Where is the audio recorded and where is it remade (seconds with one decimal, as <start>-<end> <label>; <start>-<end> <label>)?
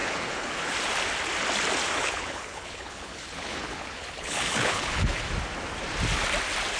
0.0-0.7 remade; 0.7-2.0 recorded; 2.0-5.3 remade; 5.3-6.8 recorded